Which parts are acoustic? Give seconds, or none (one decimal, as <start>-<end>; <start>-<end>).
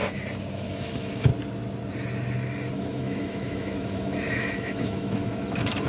0.0-0.5; 1.3-2.8